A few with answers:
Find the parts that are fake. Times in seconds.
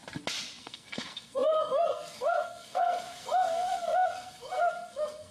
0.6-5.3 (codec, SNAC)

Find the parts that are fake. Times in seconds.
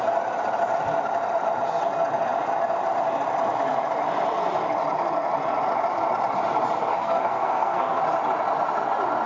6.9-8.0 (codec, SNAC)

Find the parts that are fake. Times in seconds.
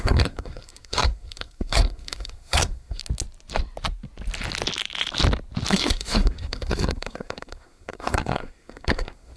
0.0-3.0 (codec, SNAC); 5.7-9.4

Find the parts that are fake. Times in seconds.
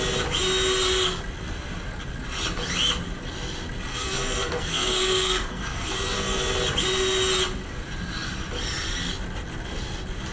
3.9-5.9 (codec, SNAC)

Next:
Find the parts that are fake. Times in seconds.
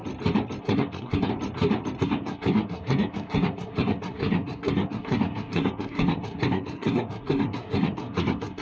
0.6-1.3 (codec, SNAC); 2.0-8.6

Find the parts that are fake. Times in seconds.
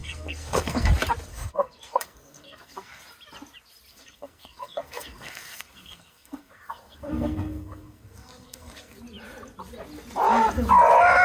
0.0-0.9 (codec, SNAC); 1.3-3.0; 3.9-9.0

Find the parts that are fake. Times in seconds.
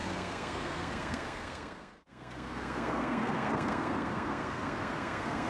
0.0-5.5 (codec, SNAC)